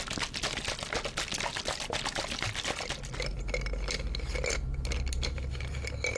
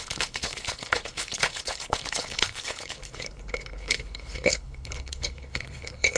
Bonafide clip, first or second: first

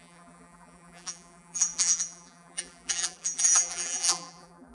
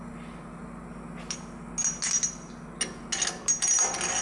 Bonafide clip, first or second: second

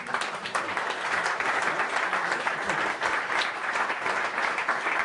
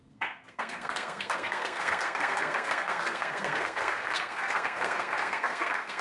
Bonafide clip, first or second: first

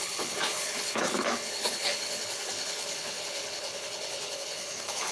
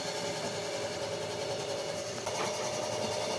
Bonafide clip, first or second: second